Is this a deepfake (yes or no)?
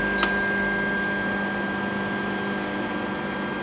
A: no